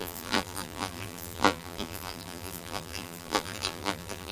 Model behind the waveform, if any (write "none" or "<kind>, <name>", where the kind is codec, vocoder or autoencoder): vocoder, BigVGAN v2